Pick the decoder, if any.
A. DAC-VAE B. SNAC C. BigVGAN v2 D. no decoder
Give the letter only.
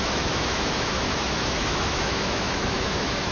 A